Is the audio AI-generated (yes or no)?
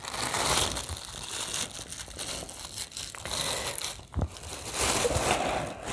no